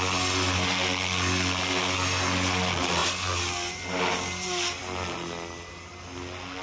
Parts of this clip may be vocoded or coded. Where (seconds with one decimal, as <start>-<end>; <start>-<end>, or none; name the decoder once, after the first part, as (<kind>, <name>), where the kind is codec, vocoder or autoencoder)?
none